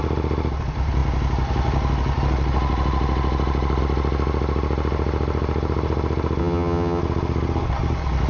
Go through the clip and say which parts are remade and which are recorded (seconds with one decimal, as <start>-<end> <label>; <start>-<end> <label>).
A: 0.0-6.4 recorded; 6.4-7.0 remade; 7.0-8.3 recorded